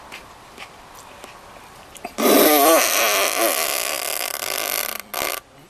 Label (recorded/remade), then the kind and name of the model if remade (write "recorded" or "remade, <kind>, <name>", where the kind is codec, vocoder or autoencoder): recorded